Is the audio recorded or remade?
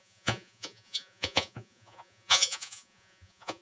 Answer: remade